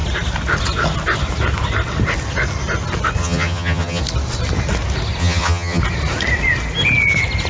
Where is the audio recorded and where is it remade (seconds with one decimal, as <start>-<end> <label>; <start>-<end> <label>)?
0.0-3.2 recorded; 3.2-4.0 remade; 4.0-5.2 recorded; 5.2-5.8 remade; 5.8-7.5 recorded